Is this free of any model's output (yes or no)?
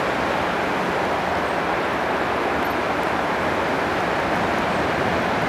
yes